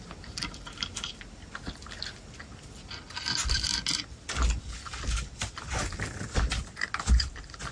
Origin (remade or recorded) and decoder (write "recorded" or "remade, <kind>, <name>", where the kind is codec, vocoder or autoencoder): recorded